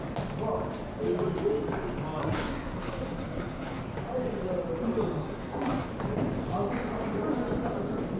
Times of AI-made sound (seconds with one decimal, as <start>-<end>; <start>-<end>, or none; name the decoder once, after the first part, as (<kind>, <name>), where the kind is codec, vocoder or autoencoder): 2.2-3.8 (codec, SNAC); 5.2-5.9